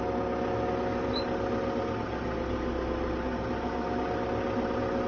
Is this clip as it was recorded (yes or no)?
yes